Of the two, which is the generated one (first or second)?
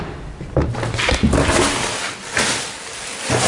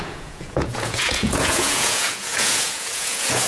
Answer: second